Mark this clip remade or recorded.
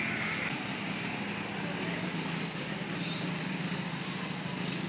recorded